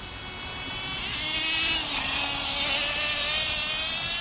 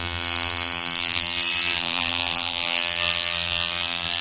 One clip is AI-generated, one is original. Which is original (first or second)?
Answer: first